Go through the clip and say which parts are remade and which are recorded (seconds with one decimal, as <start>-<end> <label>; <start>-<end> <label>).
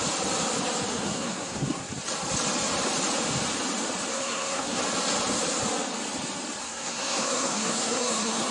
0.0-0.9 recorded; 0.9-1.9 remade; 1.9-4.1 recorded; 4.1-4.8 remade; 4.8-6.6 recorded; 6.6-8.5 remade